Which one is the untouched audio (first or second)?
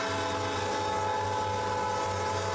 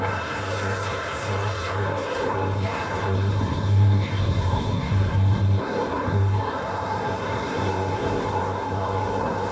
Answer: first